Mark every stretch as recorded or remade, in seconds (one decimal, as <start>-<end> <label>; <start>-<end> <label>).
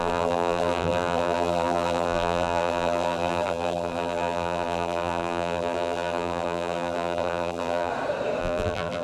0.0-7.9 remade; 7.9-8.4 recorded; 8.4-9.0 remade